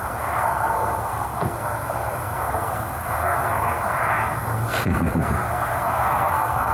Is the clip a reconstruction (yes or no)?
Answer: yes